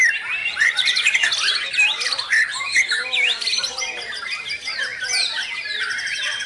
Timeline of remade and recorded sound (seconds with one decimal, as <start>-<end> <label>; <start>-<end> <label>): 0.0-0.4 recorded; 0.4-1.3 remade; 1.3-6.5 recorded